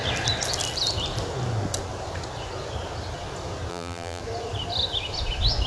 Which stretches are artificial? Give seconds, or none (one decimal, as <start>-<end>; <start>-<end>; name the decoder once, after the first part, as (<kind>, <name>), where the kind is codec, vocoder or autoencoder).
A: 3.7-4.2 (vocoder, BigVGAN v2)

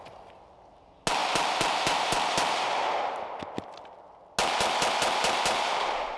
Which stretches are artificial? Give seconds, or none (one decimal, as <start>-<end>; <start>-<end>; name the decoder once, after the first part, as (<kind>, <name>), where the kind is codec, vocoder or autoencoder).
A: none